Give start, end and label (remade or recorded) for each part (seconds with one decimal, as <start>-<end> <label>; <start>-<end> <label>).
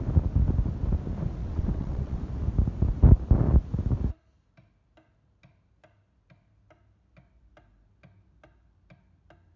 0.0-1.4 recorded; 1.4-2.2 remade; 2.2-9.6 recorded